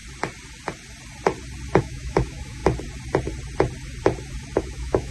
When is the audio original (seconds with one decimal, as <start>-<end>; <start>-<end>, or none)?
0.0-1.8; 2.6-4.6